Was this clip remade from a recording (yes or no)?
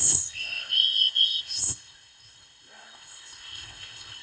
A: yes